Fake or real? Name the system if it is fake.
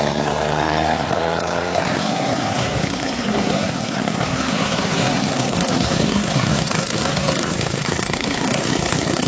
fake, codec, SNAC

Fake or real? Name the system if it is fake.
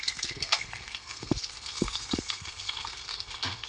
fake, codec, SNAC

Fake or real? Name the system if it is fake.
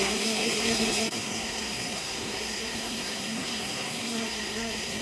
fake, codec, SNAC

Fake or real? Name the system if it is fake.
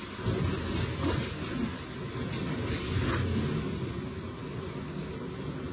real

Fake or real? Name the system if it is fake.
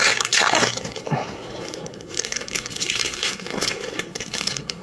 fake, codec, SNAC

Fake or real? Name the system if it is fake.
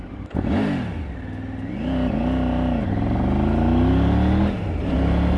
real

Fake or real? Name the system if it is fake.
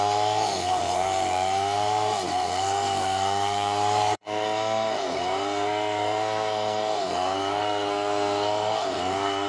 fake, codec, SNAC